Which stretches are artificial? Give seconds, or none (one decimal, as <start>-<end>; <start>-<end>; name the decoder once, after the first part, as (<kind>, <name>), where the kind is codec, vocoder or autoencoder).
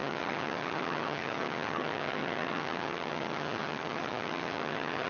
0.0-5.1 (vocoder, HiFi-GAN)